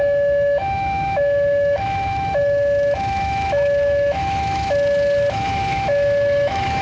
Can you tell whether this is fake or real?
fake